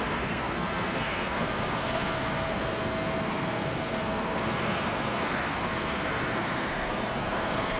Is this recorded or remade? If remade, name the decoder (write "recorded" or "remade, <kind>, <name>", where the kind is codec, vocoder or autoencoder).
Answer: remade, codec, SNAC